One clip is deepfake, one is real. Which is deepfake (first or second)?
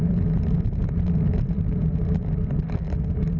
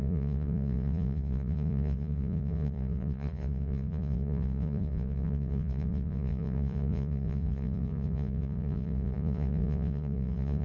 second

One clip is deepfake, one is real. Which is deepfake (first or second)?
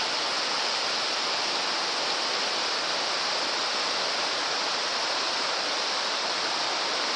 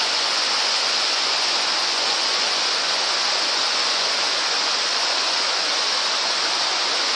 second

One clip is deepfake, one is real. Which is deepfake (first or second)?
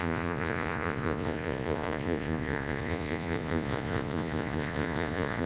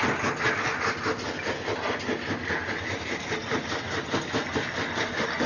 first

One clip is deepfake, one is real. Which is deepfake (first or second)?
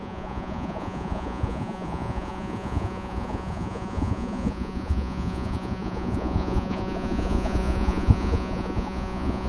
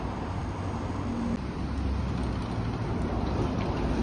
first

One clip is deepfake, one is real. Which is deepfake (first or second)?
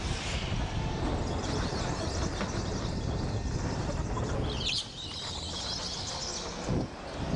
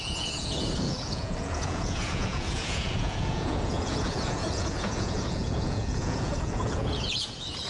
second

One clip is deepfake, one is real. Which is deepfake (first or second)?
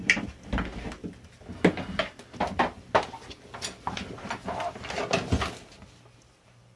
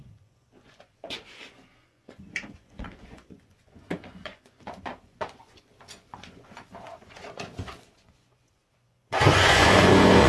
second